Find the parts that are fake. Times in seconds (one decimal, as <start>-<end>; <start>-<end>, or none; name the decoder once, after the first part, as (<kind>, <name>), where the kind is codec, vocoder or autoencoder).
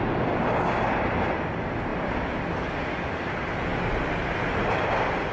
none